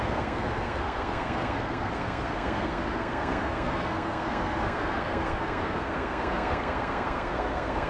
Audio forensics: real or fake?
fake